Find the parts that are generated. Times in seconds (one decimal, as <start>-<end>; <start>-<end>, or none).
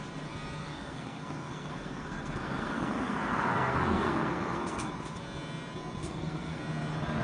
0.6-4.9; 6.0-6.6